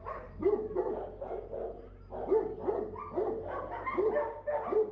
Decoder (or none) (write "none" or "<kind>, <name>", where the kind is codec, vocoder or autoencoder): none